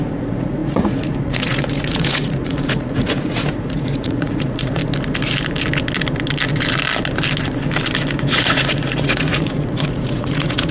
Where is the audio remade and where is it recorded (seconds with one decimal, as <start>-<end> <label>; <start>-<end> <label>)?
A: 0.0-4.8 remade; 4.8-8.1 recorded; 8.1-10.7 remade